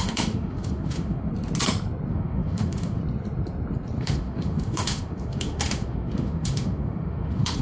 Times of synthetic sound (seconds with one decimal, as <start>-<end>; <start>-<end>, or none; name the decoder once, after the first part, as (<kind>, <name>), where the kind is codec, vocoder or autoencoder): 0.0-1.3 (autoencoder, DAC-VAE); 2.1-3.0; 4.0-7.6